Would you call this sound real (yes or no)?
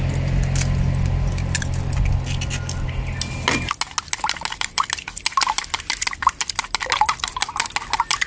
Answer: yes